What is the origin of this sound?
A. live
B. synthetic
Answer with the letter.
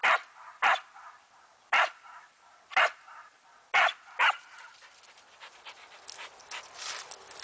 A